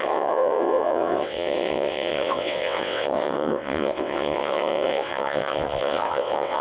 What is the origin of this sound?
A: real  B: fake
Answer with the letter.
B